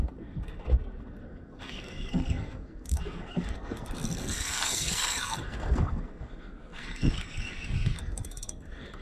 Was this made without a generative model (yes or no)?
no